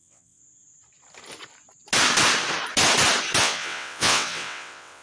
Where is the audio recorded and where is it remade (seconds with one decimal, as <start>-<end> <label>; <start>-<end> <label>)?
0.0-0.4 remade; 0.4-3.4 recorded; 3.4-5.0 remade

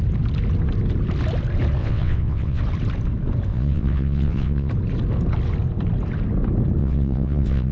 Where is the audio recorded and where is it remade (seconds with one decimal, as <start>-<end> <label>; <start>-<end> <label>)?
0.0-1.8 recorded; 1.8-2.6 remade; 2.6-3.5 recorded; 3.5-4.7 remade; 4.7-6.8 recorded; 6.8-7.7 remade

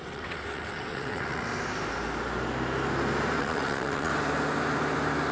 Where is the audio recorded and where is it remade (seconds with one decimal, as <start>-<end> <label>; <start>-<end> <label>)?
0.0-1.5 remade; 1.5-3.4 recorded; 3.4-4.1 remade; 4.1-5.3 recorded

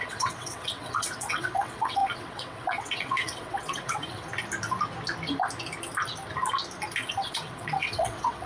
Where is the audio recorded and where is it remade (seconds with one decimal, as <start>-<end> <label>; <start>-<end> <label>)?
0.0-4.3 remade; 4.3-7.1 recorded; 7.1-8.5 remade

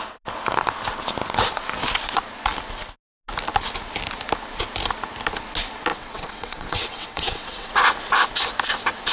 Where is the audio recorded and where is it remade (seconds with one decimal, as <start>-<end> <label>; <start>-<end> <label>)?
0.0-5.9 recorded; 5.9-7.7 remade; 7.7-9.1 recorded

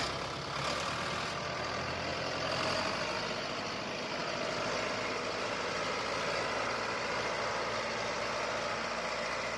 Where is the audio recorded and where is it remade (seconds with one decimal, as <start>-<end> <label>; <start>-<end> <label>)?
0.0-9.6 recorded

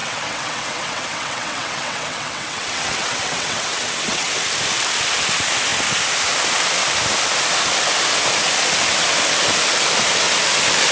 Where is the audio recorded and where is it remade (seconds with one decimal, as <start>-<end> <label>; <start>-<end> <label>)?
0.0-4.3 remade; 4.3-10.9 recorded

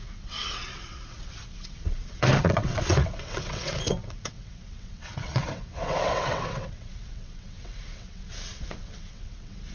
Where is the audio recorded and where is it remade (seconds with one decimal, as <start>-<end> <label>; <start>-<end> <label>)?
0.0-9.7 remade